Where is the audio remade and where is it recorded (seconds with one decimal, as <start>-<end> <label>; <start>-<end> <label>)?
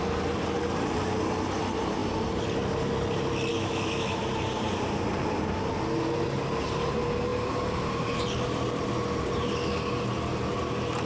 0.0-3.5 recorded; 3.5-4.2 remade; 4.2-11.1 recorded